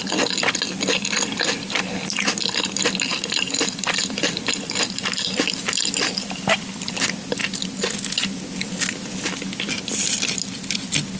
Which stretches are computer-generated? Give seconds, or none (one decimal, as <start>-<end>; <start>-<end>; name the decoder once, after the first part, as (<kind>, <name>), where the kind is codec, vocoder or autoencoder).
3.1-4.4 (vocoder, BigVGAN v2)

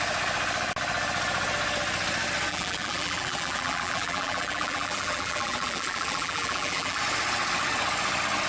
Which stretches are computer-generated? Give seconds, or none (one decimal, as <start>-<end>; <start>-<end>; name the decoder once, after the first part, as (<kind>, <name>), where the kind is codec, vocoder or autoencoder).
2.5-7.0 (vocoder, BigVGAN v2)

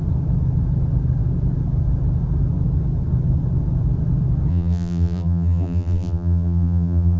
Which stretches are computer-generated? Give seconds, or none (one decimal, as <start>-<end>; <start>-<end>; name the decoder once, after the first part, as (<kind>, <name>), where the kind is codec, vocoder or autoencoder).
4.5-7.2 (vocoder, BigVGAN v2)